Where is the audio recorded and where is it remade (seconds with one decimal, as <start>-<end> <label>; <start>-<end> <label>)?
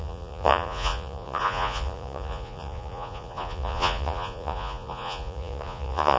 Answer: 0.0-6.2 remade